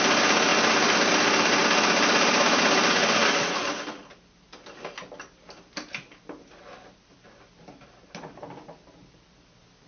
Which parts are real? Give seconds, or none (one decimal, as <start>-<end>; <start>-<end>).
0.0-9.9